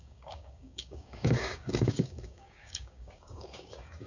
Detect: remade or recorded remade